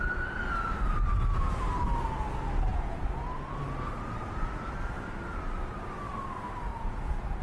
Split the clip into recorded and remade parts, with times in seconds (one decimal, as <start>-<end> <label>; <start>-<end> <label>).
0.0-2.7 recorded; 2.7-3.6 remade; 3.6-6.7 recorded; 6.7-7.4 remade